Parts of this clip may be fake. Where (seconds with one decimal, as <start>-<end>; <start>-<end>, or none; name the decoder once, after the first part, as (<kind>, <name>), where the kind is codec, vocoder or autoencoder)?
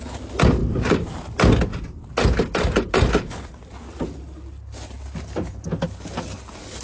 0.6-1.2 (vocoder, BigVGAN v2)